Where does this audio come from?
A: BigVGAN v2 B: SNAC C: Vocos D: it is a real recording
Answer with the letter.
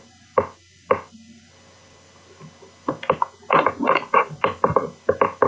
D